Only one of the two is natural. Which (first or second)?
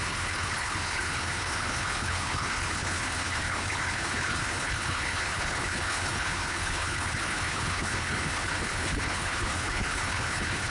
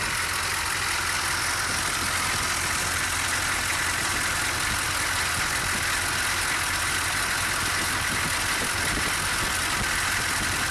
second